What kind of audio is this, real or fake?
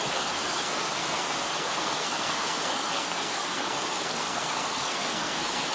fake